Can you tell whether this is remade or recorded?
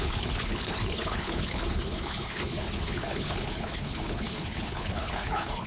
remade